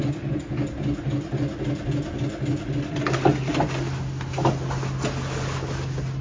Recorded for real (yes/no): yes